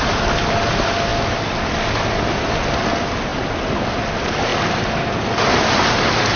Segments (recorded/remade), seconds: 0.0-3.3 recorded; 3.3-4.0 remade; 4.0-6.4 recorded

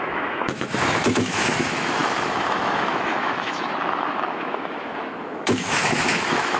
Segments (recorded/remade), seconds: 0.0-6.6 remade

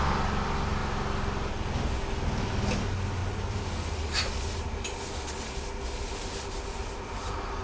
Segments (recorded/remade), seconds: 0.0-7.6 recorded

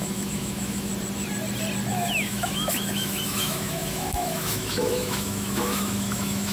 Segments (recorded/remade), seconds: 0.0-0.9 remade; 0.9-1.9 recorded; 1.9-6.5 remade

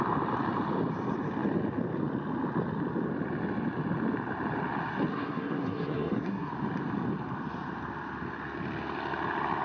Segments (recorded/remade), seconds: 0.0-5.1 recorded; 5.1-6.5 remade; 6.5-9.6 recorded

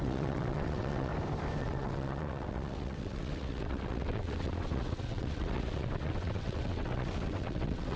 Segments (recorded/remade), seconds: 0.0-1.1 remade; 1.1-1.6 recorded; 1.6-8.0 remade

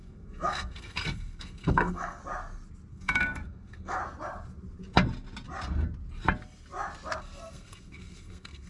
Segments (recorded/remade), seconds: 0.0-2.2 remade; 2.2-2.9 recorded; 2.9-4.0 remade; 4.0-7.2 recorded; 7.2-8.7 remade